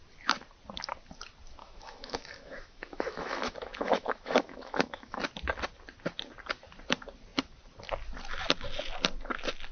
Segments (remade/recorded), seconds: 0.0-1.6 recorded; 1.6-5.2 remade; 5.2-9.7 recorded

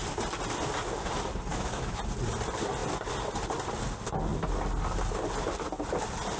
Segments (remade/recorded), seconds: 0.0-1.5 recorded; 1.5-2.0 remade; 2.0-6.4 recorded

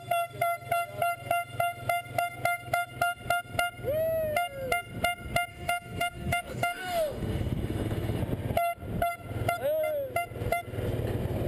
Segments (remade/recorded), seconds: 0.0-5.5 recorded; 5.5-8.2 remade; 8.2-11.5 recorded

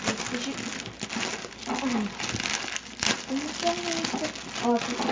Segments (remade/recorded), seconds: 0.0-5.1 recorded